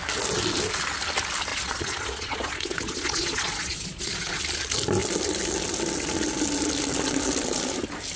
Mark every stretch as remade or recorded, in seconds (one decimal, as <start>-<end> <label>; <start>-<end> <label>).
0.0-1.5 recorded; 1.5-4.4 remade; 4.4-8.2 recorded